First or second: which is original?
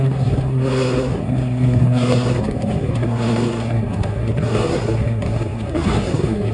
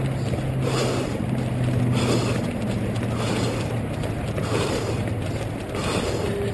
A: second